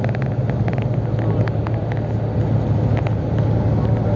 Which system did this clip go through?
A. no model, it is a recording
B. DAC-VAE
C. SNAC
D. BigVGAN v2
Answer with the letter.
A